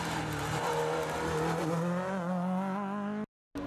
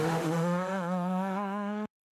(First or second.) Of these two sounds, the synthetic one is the second